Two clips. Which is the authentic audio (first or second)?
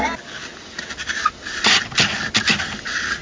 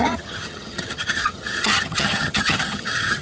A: first